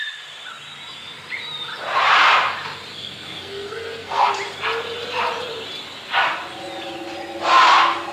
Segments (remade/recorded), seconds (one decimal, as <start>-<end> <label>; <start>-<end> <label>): 0.0-2.9 recorded; 2.9-4.3 remade; 4.3-8.1 recorded